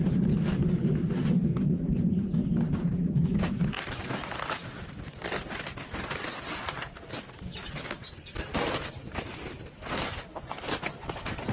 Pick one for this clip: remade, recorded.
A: recorded